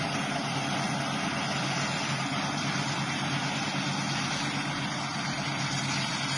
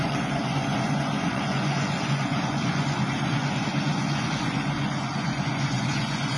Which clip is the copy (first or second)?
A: second